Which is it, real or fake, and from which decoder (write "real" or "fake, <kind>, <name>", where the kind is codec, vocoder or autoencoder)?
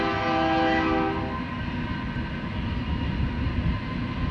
real